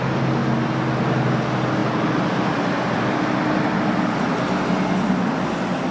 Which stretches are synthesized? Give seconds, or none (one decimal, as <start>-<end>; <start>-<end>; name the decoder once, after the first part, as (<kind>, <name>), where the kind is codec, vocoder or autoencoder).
none